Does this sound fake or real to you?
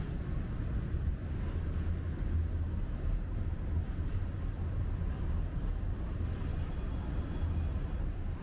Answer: real